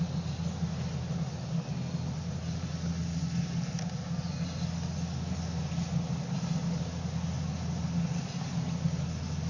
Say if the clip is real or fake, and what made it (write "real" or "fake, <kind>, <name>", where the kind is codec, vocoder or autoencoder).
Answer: real